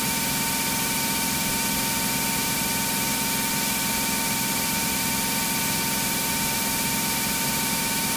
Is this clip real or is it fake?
real